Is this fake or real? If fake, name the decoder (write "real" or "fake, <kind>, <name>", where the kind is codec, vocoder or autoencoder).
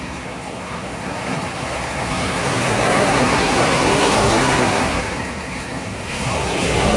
fake, codec, SNAC